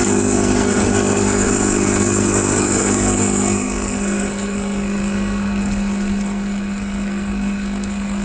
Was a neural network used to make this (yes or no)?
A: yes